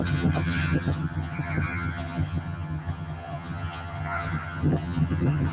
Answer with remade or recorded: remade